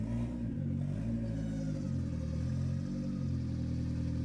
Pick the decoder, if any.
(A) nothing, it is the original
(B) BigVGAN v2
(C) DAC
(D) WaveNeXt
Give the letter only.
A